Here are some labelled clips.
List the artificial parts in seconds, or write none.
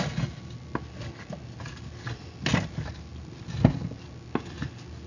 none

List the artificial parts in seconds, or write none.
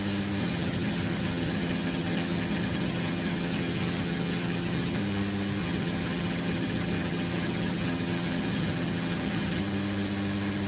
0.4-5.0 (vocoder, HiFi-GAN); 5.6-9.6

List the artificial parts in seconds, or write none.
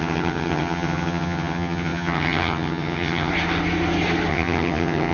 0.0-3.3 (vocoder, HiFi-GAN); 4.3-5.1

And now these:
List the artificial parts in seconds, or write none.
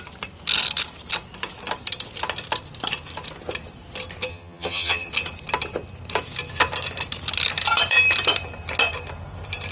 4.3-5.1 (vocoder, HiFi-GAN)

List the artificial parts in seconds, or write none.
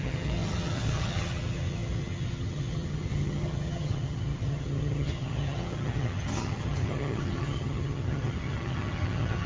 0.0-9.5 (vocoder, HiFi-GAN)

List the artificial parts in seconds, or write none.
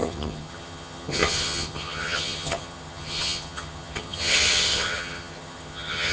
0.0-6.1 (vocoder, HiFi-GAN)